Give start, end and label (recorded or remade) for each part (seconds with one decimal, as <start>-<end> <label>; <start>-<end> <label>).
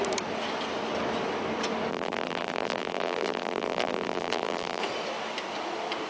0.0-1.9 recorded; 1.9-4.8 remade; 4.8-6.1 recorded